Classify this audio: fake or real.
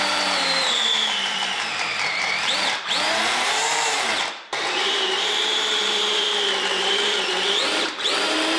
fake